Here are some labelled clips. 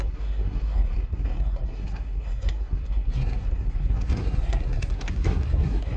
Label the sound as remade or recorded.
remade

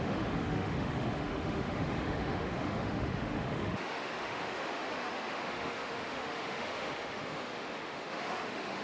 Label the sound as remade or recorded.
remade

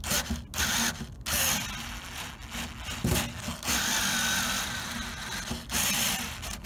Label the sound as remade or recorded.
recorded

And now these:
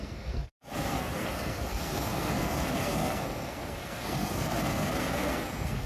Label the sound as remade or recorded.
remade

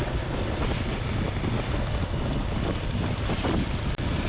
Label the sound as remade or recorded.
recorded